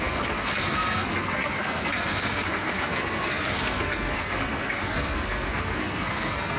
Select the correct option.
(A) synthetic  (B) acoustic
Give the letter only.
A